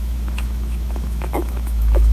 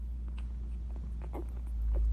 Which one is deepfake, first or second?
first